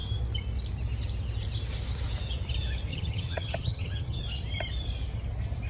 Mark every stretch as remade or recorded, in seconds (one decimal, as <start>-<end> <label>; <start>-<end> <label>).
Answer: 0.0-2.9 recorded; 2.9-4.2 remade; 4.2-5.7 recorded